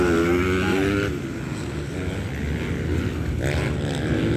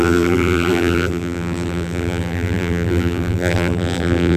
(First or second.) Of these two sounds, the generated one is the second